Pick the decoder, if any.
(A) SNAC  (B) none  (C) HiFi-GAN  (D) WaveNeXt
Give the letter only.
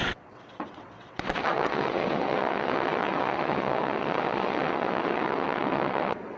D